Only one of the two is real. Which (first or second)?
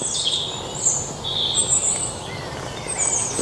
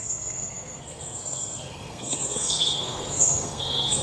first